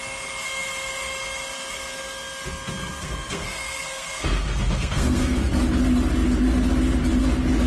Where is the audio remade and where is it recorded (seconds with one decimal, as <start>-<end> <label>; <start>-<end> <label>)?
0.0-2.8 recorded; 2.8-5.5 remade; 5.5-7.7 recorded